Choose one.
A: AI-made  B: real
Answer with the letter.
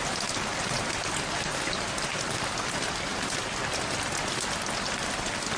B